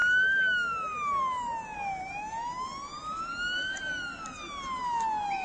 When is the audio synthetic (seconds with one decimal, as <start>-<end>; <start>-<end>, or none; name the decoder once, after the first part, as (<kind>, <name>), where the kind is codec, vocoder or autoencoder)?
3.0-4.0 (vocoder, BigVGAN v2)